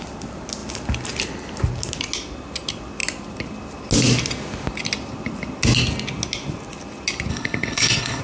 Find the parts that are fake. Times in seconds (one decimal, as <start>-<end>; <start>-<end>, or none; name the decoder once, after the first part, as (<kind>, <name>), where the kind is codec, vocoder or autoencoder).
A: 7.3-8.2 (codec, HILCodec)